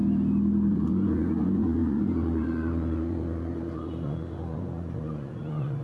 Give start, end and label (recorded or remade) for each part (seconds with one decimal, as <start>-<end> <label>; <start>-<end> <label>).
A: 0.0-0.7 recorded; 0.7-5.8 remade